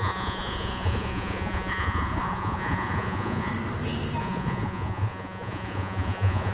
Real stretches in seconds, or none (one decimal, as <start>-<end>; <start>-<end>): 3.5-4.2